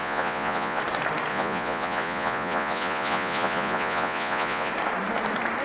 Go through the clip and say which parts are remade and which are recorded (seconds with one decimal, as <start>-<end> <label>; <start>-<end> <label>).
0.0-0.8 remade; 0.8-1.3 recorded; 1.3-4.7 remade; 4.7-5.6 recorded